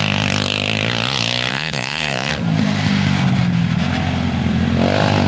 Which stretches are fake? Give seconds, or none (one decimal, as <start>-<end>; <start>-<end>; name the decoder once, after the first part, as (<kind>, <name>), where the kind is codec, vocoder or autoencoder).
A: 1.5-2.3 (codec, SNAC)